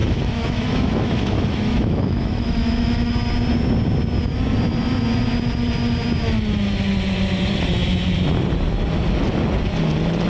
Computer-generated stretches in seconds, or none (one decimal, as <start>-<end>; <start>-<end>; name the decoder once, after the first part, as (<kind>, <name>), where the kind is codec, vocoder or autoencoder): 0.0-3.1 (autoencoder, DAC-VAE)

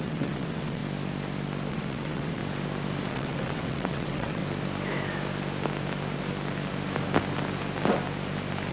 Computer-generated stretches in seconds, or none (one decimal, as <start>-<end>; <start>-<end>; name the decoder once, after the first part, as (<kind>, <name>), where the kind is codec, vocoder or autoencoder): 0.0-0.8 (vocoder, WaveNeXt); 1.7-2.4; 3.1-4.4